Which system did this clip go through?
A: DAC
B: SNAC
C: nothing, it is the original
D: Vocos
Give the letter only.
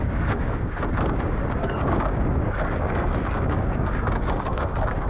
A